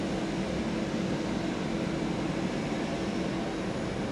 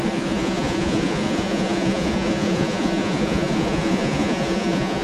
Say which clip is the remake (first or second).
second